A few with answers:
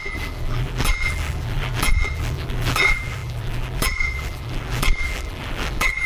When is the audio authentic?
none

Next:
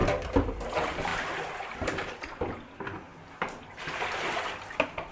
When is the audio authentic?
3.1-5.1

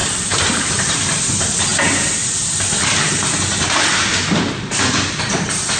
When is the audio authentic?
0.7-5.8